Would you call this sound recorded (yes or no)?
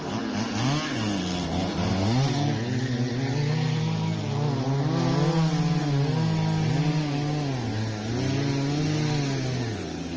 yes